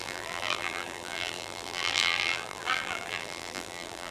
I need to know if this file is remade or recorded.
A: remade